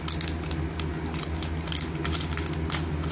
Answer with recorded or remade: recorded